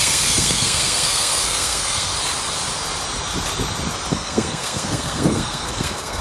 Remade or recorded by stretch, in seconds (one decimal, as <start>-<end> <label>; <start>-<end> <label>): 0.0-2.1 remade; 2.1-4.1 recorded; 4.1-6.2 remade